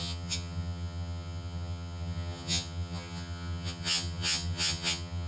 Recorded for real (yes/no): no